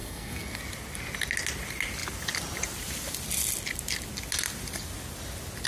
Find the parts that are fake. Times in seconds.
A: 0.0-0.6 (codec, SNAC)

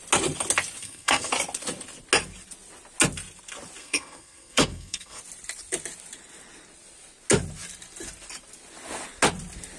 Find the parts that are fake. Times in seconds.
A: 0.8-1.3 (codec, SNAC); 3.8-5.2

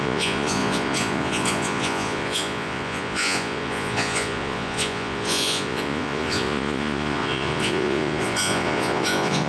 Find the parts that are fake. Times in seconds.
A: 0.0-9.5 (vocoder, Vocos)

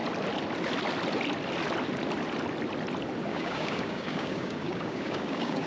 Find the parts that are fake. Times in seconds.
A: 3.3-5.7 (codec, DAC)

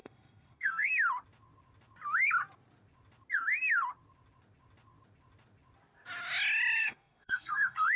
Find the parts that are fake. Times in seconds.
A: 0.0-0.9 (codec, SNAC); 6.8-8.0

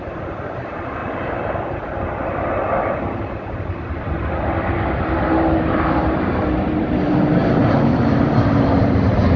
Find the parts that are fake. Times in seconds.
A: 0.0-9.4 (vocoder, BigVGAN v2)

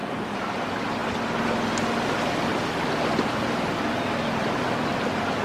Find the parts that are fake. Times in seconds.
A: 0.0-0.6 (vocoder, BigVGAN v2)

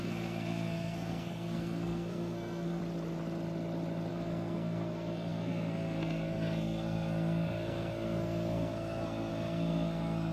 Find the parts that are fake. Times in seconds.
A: 0.0-2.8 (codec, SNAC); 4.1-10.3